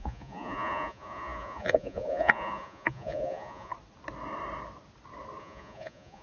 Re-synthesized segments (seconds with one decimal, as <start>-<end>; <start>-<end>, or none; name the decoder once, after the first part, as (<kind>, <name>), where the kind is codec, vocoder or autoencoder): 0.0-3.7 (vocoder, Vocos); 5.4-6.2